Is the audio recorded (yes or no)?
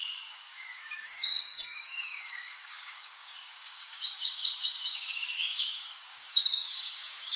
no